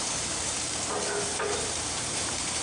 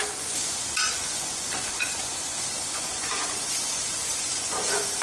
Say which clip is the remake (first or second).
second